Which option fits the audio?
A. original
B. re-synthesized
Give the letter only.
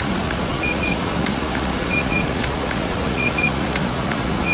B